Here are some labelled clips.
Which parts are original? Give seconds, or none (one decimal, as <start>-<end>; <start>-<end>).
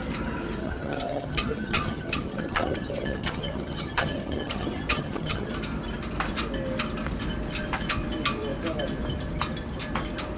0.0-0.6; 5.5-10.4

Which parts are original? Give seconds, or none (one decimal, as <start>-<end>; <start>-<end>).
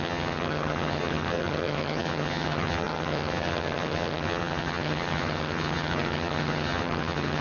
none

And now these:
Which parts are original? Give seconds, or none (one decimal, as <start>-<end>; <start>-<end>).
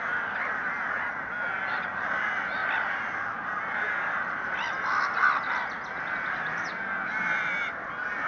0.0-8.3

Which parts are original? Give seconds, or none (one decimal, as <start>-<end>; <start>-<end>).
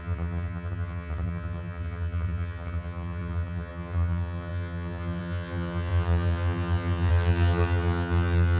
none